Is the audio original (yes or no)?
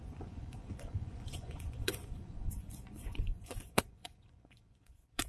no